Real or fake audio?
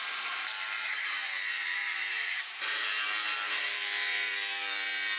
fake